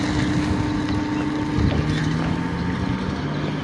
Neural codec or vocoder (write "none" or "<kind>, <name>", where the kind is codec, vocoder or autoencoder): none